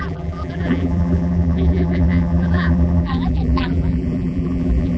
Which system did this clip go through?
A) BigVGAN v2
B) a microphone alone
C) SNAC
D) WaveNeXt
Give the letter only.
A